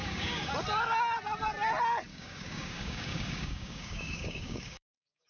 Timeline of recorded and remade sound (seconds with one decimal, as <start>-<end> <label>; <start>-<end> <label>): 0.0-0.5 remade; 0.5-2.1 recorded; 2.1-5.3 remade